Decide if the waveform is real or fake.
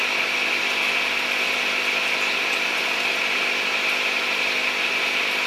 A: real